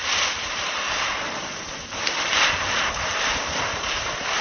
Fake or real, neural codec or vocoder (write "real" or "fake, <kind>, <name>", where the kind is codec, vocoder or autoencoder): fake, vocoder, BigVGAN v2